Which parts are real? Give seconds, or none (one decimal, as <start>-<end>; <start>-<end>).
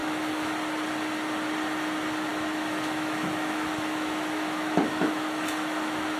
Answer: 0.5-2.3